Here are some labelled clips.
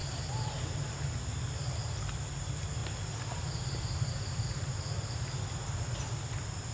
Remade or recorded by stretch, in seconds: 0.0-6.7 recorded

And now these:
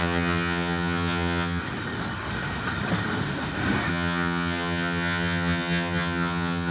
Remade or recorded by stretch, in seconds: 0.0-1.6 remade; 1.6-3.9 recorded; 3.9-6.7 remade

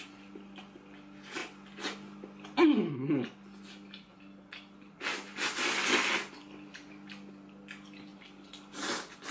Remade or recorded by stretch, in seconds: 0.0-9.3 recorded

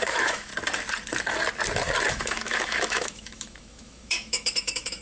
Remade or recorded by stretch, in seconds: 0.0-0.5 remade; 0.5-2.1 recorded; 2.1-5.0 remade

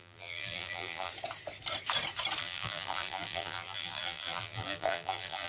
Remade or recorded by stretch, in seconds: 0.0-1.1 remade; 1.1-2.4 recorded; 2.4-5.5 remade

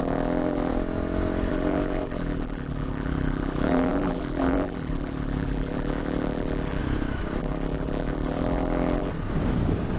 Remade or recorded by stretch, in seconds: 0.0-0.7 remade; 0.7-1.5 recorded; 1.5-6.8 remade; 6.8-7.4 recorded; 7.4-9.1 remade; 9.1-10.0 recorded

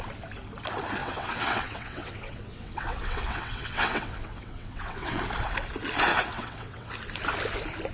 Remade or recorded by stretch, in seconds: 0.0-1.0 recorded; 1.0-5.2 remade; 5.2-6.1 recorded; 6.1-6.9 remade; 6.9-7.9 recorded

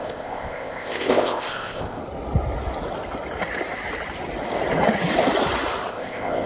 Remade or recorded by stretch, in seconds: 0.0-2.0 remade; 2.0-5.9 recorded; 5.9-6.5 remade